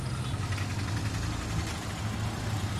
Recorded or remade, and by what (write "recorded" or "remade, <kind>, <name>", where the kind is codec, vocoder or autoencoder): recorded